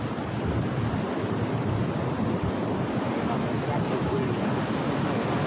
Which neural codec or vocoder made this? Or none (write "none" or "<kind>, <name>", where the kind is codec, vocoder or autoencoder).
none